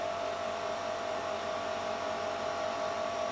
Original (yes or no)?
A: yes